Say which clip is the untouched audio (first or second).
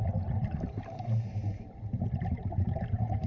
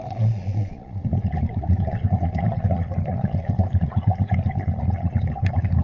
first